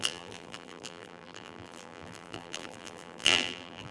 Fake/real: fake